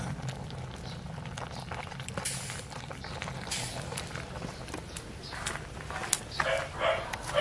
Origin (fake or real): fake